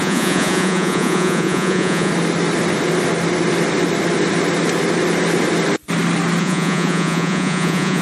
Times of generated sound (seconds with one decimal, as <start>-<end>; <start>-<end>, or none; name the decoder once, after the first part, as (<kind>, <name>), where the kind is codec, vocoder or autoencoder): 0.0-2.1 (vocoder, Vocos); 6.4-8.0